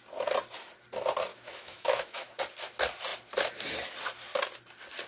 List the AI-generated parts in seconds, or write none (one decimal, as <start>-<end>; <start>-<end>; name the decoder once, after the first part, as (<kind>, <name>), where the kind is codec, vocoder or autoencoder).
1.3-2.4 (autoencoder, DAC-VAE)